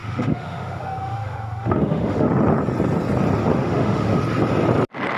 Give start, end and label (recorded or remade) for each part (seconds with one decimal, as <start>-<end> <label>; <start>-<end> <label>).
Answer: 0.0-2.3 remade; 2.3-3.5 recorded; 3.5-4.2 remade; 4.2-5.2 recorded